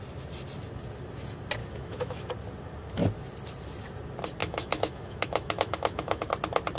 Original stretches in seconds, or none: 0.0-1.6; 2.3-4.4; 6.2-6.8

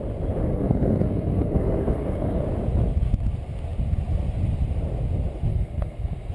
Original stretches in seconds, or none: 0.0-0.5; 2.4-5.5

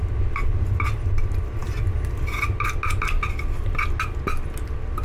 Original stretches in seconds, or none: 0.0-5.0

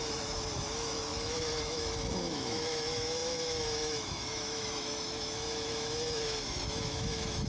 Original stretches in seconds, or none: none

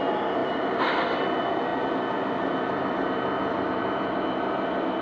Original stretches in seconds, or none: 0.0-0.4; 1.0-3.4; 4.1-5.0

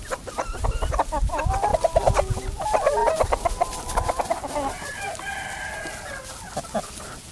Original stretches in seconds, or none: 0.0-7.3